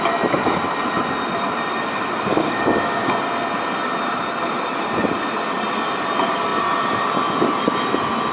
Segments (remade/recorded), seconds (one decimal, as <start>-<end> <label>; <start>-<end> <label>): 0.0-2.3 recorded; 2.3-3.1 remade; 3.1-8.3 recorded